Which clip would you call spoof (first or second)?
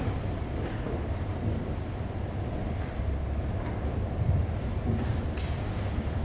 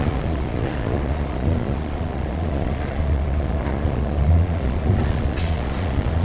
second